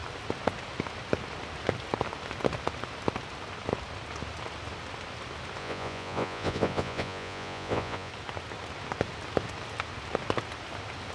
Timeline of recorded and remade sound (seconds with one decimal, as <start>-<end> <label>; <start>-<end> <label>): 0.0-5.6 recorded; 5.6-8.1 remade; 8.1-11.1 recorded

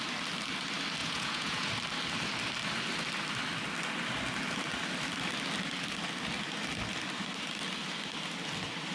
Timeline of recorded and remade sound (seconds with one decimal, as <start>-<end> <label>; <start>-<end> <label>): 0.0-1.0 recorded; 1.0-1.7 remade; 1.7-8.9 recorded

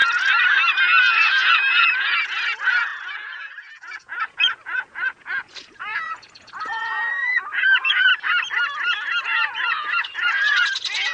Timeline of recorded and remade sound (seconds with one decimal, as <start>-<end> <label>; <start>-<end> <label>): 0.0-1.0 recorded; 1.0-8.1 remade; 8.1-9.2 recorded; 9.2-11.1 remade

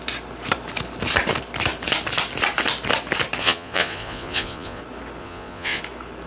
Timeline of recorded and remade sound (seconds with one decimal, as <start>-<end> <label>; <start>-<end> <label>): 0.0-3.4 recorded; 3.4-4.8 remade; 4.8-5.2 recorded; 5.2-5.8 remade; 5.8-6.3 recorded

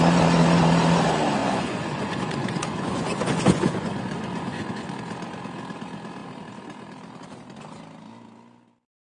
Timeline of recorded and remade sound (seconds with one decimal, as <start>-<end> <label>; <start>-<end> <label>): 0.0-1.4 recorded; 1.4-4.9 remade; 4.9-9.1 recorded

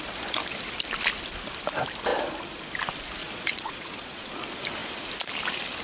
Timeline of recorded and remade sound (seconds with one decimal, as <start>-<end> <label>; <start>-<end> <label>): 0.0-3.2 recorded; 3.2-4.3 remade; 4.3-5.8 recorded